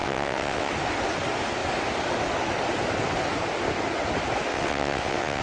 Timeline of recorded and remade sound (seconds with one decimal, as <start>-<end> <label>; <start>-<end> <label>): 0.0-0.7 remade; 0.7-4.5 recorded; 4.5-5.4 remade